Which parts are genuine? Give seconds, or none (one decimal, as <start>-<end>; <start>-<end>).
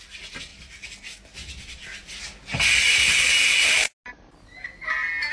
0.0-5.3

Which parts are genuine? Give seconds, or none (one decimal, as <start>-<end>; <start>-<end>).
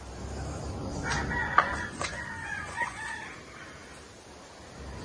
0.0-1.4; 3.0-5.0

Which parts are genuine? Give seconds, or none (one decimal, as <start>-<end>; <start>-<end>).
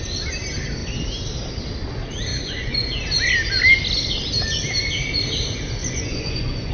0.0-2.3; 3.0-5.8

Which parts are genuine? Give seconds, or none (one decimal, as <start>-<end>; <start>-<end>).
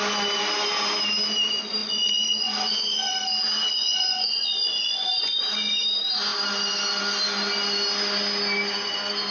0.0-1.8; 3.1-3.7; 5.4-9.3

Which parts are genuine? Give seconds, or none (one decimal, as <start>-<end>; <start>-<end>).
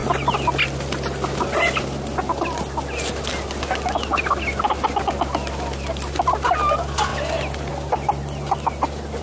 0.0-9.2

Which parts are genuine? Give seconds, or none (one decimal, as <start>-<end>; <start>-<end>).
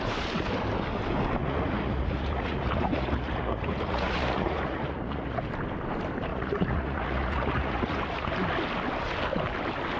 0.0-1.4; 5.4-6.3; 8.3-10.0